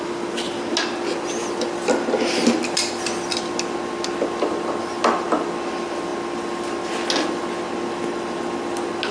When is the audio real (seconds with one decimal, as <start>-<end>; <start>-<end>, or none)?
0.0-9.1